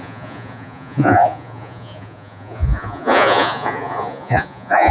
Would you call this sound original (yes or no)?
no